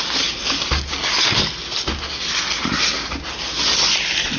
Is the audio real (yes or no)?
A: yes